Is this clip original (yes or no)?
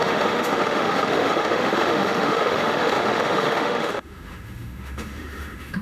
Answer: no